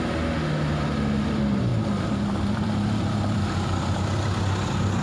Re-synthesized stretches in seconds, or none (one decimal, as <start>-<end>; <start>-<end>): 1.7-3.4